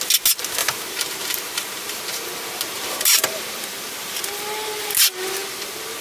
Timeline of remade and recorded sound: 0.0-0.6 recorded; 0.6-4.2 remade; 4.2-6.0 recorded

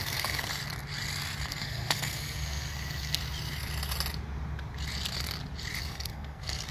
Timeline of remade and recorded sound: 0.0-0.5 remade; 0.5-1.5 recorded; 1.5-3.2 remade; 3.2-5.8 recorded; 5.8-6.7 remade

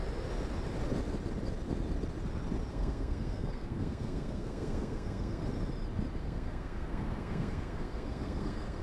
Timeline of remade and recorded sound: 0.0-2.7 recorded; 2.7-5.4 remade; 5.4-6.2 recorded; 6.2-8.8 remade